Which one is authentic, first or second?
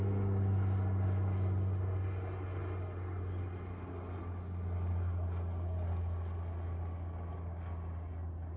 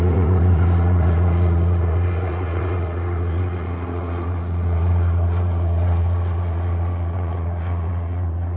first